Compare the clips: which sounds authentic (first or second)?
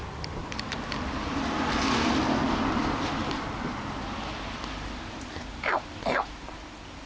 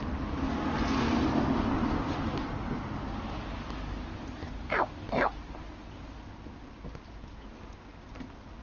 second